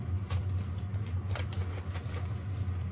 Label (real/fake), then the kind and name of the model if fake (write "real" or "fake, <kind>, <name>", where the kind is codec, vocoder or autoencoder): real